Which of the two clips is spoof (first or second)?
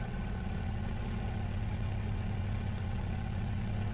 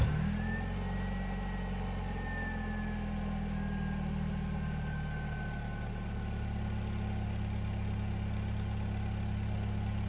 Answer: first